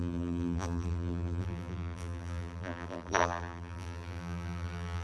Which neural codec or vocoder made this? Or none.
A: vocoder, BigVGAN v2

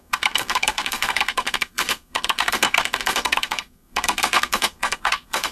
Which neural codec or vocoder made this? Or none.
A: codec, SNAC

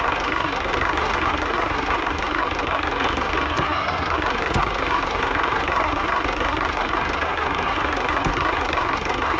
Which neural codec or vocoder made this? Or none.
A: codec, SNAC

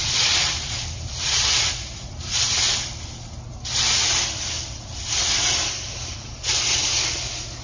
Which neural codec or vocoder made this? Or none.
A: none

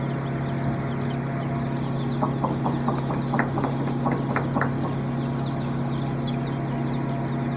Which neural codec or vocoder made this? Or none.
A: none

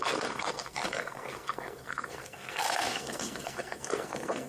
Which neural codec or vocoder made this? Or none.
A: codec, SNAC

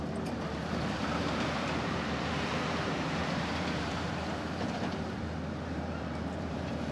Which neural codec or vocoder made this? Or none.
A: vocoder, BigVGAN v2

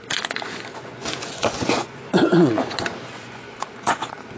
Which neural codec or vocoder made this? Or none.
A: vocoder, Vocos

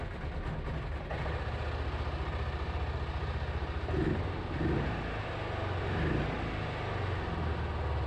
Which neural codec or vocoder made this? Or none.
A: none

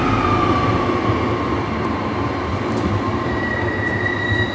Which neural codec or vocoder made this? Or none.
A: none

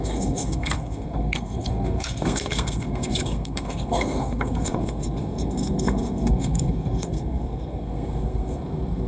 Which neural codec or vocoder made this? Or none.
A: codec, SNAC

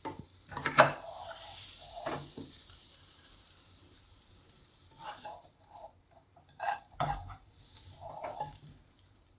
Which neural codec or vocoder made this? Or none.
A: vocoder, BigVGAN v2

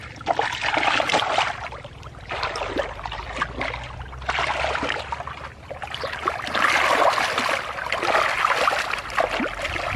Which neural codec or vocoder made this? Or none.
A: none